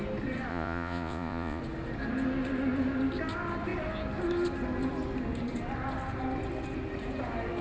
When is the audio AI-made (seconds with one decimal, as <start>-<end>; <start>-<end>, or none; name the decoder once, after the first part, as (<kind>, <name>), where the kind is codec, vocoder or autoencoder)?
0.5-1.6 (vocoder, Vocos)